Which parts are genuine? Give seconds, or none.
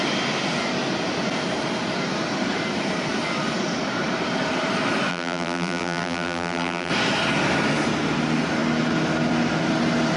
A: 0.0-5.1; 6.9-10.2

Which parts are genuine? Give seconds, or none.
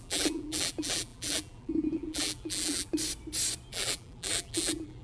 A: 2.9-3.7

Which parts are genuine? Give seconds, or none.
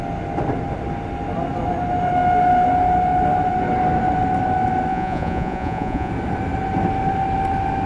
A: 0.0-4.9; 6.1-7.9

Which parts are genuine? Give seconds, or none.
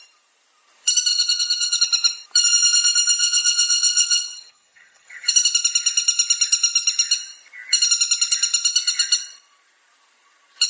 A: 0.0-1.1; 1.8-3.2; 5.3-10.7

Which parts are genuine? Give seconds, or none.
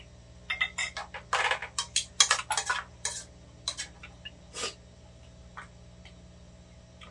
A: 0.0-7.1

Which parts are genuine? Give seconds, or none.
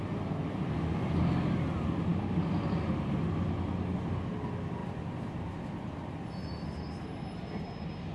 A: 0.0-8.1